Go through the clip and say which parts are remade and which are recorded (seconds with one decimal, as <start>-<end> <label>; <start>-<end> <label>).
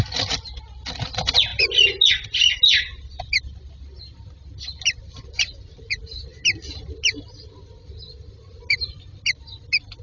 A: 0.0-10.0 recorded